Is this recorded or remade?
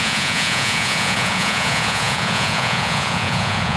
remade